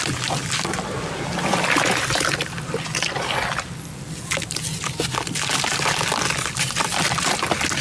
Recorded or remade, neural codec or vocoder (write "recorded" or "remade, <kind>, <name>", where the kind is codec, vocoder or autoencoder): recorded